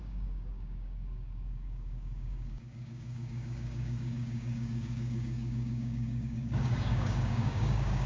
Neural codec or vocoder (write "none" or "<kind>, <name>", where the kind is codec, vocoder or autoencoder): codec, DAC